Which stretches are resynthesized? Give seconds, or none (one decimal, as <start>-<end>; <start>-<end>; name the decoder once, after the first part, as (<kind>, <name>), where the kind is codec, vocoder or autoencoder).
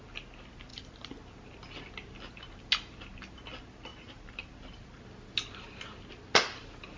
3.9-4.5 (vocoder, BigVGAN v2)